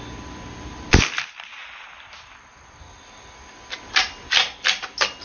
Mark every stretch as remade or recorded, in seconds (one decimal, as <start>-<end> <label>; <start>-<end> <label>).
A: 0.0-5.2 recorded